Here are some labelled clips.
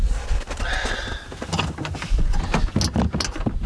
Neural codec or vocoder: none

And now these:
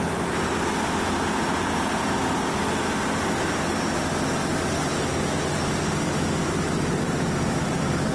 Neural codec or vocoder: none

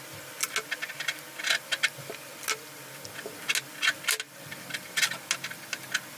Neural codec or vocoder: none